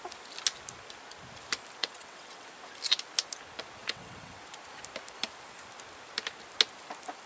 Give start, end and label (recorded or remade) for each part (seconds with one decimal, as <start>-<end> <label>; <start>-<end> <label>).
0.0-1.8 recorded; 1.8-2.5 remade; 2.5-3.8 recorded; 3.8-4.4 remade; 4.4-7.3 recorded